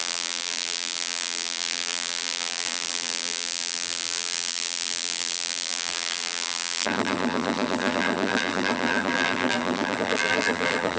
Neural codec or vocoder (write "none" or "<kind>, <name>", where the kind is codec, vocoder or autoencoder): vocoder, BigVGAN v2